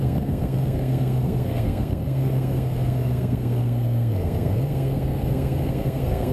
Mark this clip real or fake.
fake